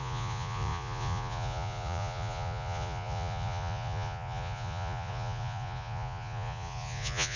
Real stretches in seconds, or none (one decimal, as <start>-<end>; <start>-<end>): none